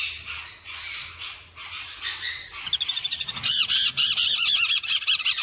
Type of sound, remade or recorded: recorded